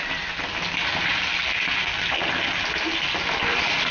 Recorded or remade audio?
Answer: recorded